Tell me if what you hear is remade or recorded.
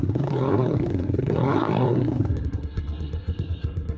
remade